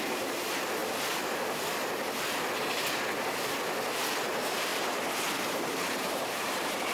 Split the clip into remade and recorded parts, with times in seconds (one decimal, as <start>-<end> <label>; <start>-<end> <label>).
0.0-0.8 remade; 0.8-4.2 recorded; 4.2-4.7 remade; 4.7-5.4 recorded; 5.4-6.9 remade